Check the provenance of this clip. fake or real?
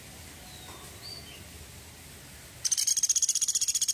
real